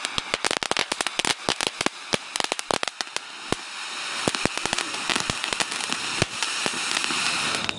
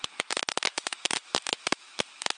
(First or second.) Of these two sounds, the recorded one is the first